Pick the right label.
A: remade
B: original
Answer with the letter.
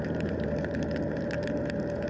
A